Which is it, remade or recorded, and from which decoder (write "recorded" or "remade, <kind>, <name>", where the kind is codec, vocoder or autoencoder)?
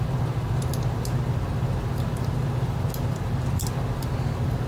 recorded